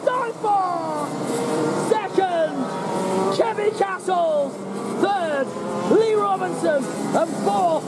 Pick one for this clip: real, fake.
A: real